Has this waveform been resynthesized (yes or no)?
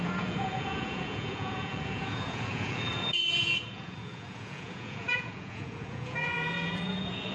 yes